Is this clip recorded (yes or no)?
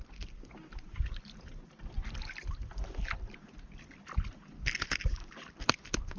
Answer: yes